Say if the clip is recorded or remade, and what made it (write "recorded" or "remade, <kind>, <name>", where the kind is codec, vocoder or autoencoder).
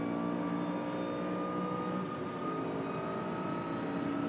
recorded